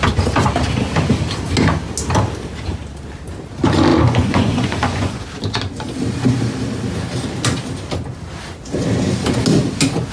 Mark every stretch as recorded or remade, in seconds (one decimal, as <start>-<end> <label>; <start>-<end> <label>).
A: 0.0-3.9 recorded; 3.9-5.2 remade; 5.2-10.1 recorded